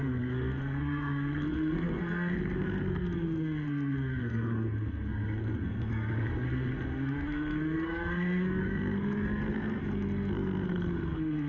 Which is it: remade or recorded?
remade